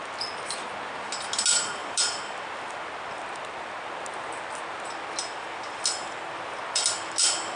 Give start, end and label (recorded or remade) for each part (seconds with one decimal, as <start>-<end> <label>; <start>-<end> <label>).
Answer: 0.0-7.6 recorded